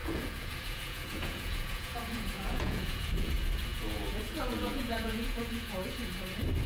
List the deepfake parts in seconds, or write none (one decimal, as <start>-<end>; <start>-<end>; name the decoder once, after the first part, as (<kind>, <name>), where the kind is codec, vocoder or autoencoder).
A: 0.0-3.3 (vocoder, Vocos); 3.7-6.1